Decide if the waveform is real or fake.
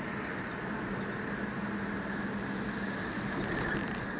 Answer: real